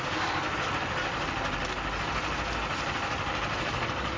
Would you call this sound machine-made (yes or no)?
no